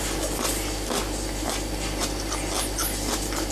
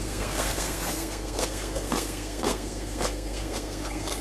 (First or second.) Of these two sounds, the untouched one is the first